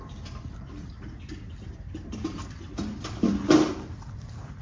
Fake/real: real